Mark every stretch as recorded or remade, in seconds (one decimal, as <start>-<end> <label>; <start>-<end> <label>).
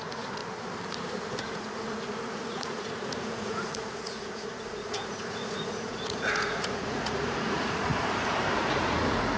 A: 0.0-0.4 remade; 0.4-1.4 recorded; 1.4-7.9 remade; 7.9-8.6 recorded; 8.6-9.4 remade